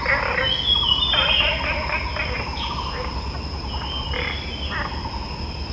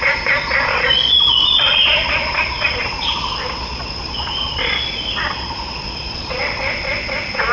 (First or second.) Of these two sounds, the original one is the first